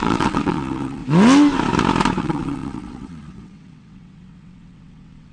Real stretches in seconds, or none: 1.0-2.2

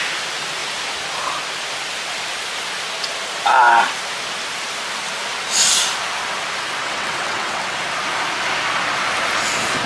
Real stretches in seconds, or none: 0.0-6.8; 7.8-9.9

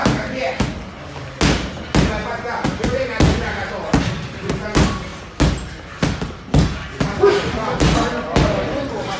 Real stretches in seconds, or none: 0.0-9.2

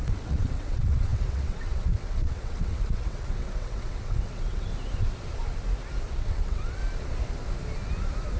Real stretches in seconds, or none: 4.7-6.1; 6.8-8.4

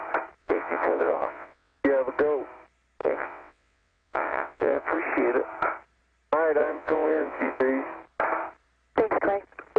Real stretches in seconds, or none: 0.0-0.4; 1.8-3.0; 5.0-6.6; 7.6-9.8

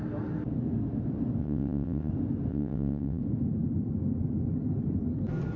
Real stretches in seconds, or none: 0.0-1.4; 2.1-2.5; 3.2-5.6

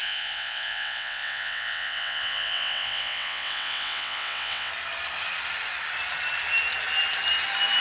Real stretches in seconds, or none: 4.7-7.8

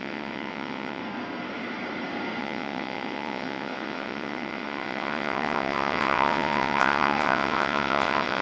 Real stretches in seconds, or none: 1.0-2.4